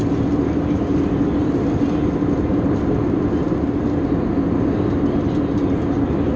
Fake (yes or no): no